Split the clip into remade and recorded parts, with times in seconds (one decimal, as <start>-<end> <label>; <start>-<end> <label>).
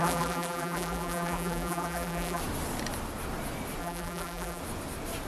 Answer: 0.0-2.4 remade; 2.4-3.8 recorded; 3.8-4.6 remade; 4.6-5.3 recorded